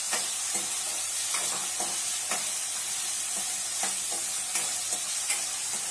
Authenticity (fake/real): real